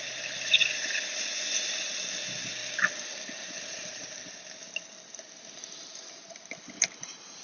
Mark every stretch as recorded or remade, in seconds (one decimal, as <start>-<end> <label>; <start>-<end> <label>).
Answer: 0.0-7.4 recorded